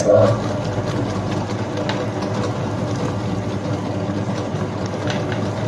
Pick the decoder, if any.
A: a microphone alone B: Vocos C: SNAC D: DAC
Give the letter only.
A